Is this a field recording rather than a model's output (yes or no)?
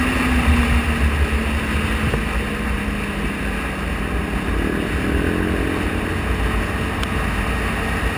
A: yes